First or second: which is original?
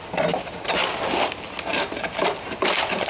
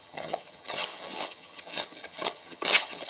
first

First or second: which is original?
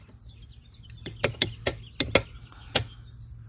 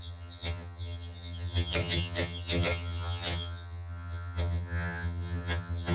first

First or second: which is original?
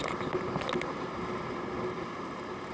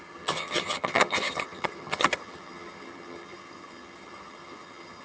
first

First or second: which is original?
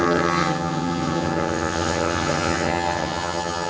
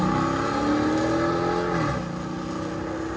second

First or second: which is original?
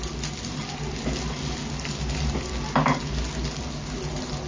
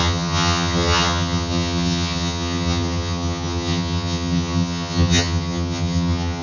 first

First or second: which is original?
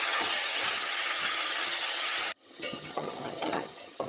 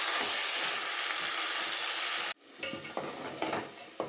second